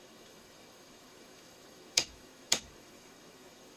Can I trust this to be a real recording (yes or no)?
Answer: no